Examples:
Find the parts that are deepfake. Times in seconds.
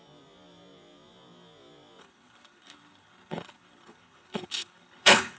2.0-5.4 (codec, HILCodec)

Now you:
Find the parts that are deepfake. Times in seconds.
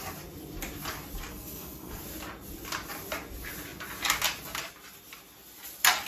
1.3-2.0 (codec, SNAC)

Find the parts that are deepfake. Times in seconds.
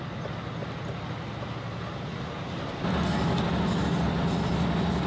none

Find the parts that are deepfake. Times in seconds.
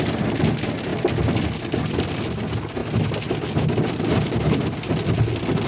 none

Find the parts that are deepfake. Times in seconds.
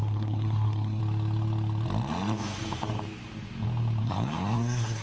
0.0-1.0 (codec, SNAC); 4.0-5.0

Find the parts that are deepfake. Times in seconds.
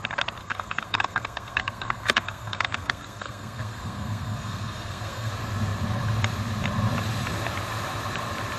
0.4-5.3 (codec, SNAC)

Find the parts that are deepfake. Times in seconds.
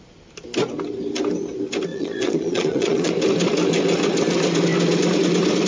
1.9-3.1 (vocoder, Vocos)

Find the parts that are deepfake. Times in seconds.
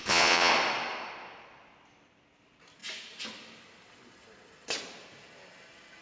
0.0-0.5 (vocoder, Vocos)